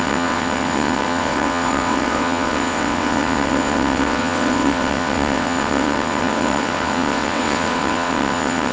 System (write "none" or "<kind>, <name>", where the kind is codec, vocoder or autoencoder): vocoder, WaveNeXt